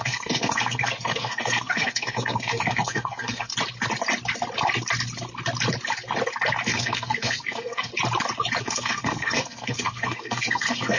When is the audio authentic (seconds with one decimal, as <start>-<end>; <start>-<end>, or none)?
3.5-6.7; 7.9-8.6